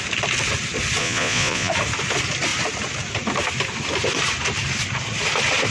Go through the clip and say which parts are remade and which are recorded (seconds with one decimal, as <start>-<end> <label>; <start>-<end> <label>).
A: 0.0-1.0 recorded; 1.0-1.7 remade; 1.7-5.7 recorded